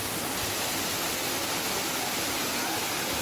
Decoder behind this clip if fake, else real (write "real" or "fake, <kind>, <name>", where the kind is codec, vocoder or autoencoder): real